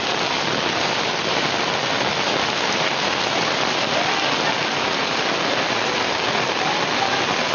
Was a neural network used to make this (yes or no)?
no